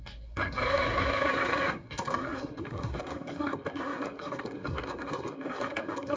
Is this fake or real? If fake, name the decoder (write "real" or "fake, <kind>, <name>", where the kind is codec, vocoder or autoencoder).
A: fake, codec, SNAC